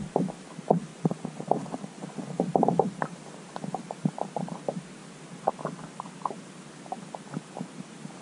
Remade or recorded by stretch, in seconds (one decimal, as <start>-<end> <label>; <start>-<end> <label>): 0.0-0.9 recorded; 0.9-2.0 remade; 2.0-8.2 recorded